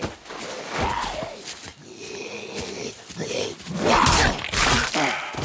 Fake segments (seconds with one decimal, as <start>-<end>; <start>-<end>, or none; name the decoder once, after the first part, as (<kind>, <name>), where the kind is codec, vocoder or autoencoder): none